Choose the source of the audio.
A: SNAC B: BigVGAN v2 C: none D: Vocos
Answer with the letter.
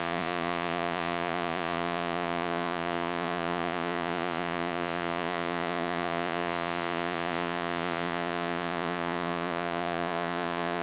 D